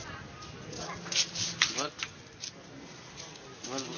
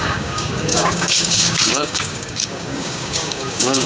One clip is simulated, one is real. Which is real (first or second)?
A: first